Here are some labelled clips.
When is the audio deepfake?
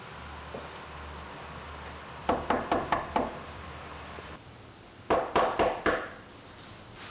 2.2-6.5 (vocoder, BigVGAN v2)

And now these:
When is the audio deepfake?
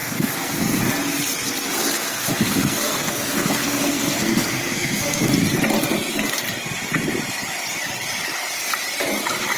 0.0-0.8 (codec, SNAC); 2.1-5.3